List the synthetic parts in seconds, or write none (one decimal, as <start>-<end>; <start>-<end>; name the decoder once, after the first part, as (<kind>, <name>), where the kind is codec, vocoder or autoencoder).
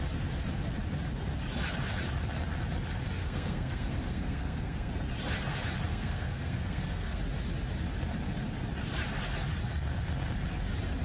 3.2-4.9 (codec, SNAC); 5.9-7.2